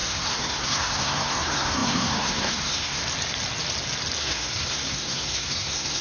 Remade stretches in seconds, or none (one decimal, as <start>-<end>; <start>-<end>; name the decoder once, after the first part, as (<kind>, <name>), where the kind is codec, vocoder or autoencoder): 0.0-3.0 (codec, SNAC); 4.2-6.0